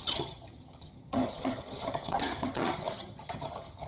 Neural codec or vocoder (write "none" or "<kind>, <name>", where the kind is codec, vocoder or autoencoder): vocoder, HiFi-GAN